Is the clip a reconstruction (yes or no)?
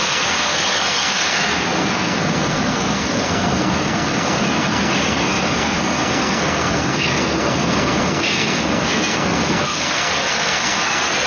yes